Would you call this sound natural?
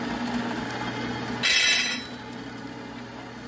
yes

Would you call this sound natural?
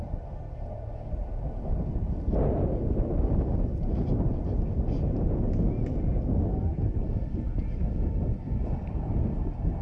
yes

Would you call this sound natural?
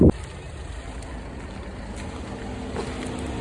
yes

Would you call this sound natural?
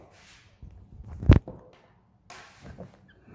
yes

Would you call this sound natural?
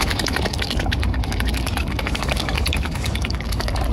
no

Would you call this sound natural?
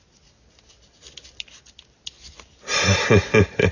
yes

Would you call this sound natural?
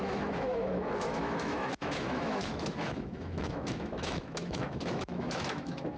no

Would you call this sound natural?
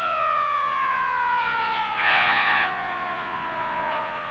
no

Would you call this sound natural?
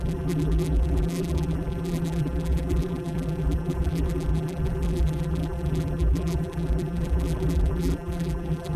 no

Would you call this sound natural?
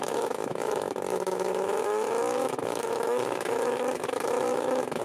no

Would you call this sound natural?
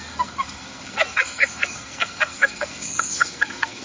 no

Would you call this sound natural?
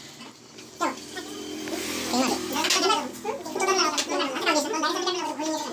yes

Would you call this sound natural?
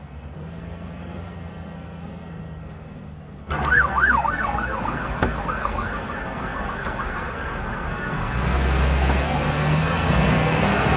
no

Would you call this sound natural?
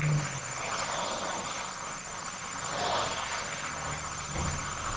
yes